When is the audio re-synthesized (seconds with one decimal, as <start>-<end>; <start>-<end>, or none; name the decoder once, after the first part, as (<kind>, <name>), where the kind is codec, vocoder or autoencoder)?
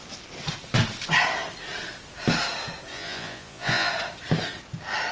2.9-3.9 (vocoder, Vocos)